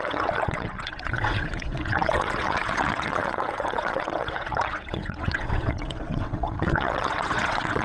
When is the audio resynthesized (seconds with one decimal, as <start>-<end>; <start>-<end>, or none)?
0.0-7.8